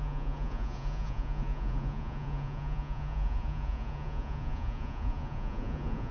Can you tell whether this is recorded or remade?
remade